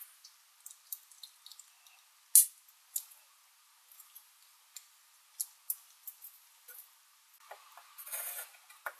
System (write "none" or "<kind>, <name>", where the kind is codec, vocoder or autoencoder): none